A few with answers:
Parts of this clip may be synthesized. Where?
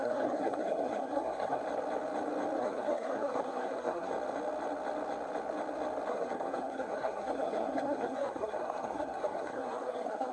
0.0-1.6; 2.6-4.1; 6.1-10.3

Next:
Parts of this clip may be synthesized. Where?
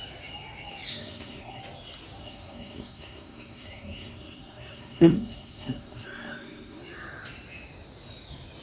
0.9-1.6; 2.2-6.8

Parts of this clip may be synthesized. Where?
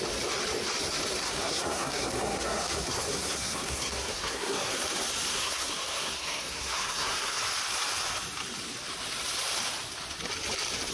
1.2-4.7; 5.3-7.4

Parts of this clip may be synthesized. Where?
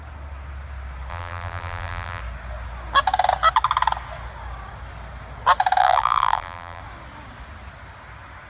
1.1-2.2; 5.8-6.8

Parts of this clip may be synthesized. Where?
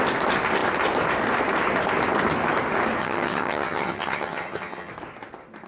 3.0-4.9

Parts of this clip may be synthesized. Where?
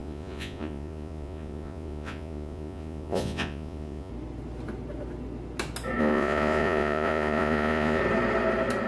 0.0-4.1; 6.0-8.0